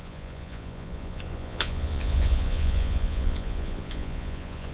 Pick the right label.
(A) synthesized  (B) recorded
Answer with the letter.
A